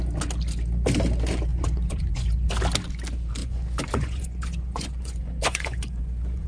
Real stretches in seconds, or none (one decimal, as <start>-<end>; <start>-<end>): 0.0-1.5; 2.5-3.4